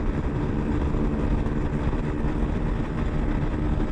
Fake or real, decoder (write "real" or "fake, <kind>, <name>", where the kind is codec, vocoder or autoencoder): fake, vocoder, BigVGAN v2